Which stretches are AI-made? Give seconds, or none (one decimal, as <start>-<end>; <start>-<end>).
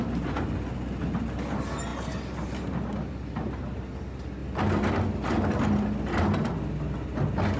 none